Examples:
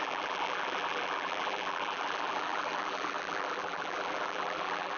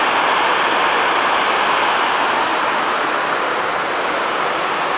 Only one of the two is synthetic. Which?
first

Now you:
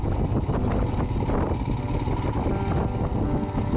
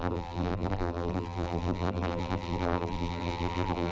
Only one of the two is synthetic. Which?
second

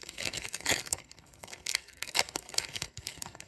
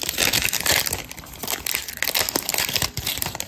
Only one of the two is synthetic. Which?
first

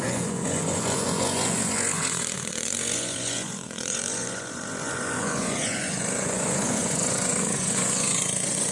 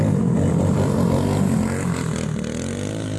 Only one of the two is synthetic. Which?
first